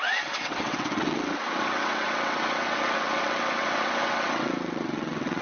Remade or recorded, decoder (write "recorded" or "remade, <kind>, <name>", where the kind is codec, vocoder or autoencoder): remade, vocoder, WaveNeXt